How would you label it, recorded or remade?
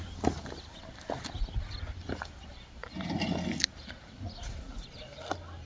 recorded